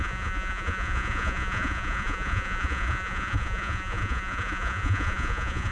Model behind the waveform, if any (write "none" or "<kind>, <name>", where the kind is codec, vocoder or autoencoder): vocoder, Vocos